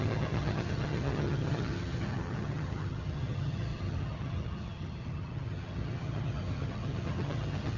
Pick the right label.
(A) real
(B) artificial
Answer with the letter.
B